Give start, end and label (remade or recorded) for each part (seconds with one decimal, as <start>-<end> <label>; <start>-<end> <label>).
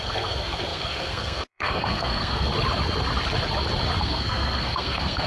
0.0-2.5 remade; 2.5-4.0 recorded; 4.0-5.3 remade